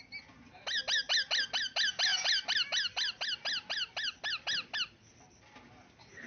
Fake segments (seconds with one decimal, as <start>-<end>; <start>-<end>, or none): none